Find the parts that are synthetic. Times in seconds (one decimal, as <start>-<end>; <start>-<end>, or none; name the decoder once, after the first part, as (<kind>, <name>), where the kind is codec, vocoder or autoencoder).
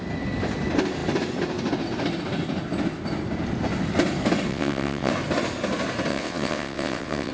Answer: 4.5-5.1 (vocoder, WaveNeXt); 6.1-7.3